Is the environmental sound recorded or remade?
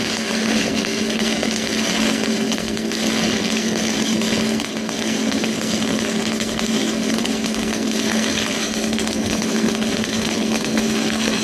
remade